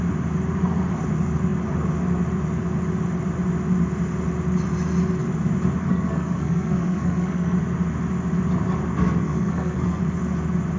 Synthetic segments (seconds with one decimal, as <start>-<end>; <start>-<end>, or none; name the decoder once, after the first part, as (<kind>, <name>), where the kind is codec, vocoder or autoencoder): 5.8-7.6 (codec, SNAC); 8.9-10.0